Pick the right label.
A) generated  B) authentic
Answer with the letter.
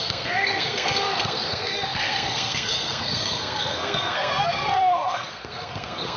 A